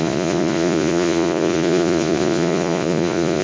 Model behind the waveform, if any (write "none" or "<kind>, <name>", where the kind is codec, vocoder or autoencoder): vocoder, Vocos